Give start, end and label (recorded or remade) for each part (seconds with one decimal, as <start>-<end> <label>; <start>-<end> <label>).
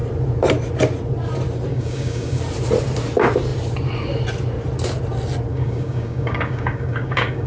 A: 0.0-1.7 recorded; 1.7-2.4 remade; 2.4-5.5 recorded; 5.5-7.5 remade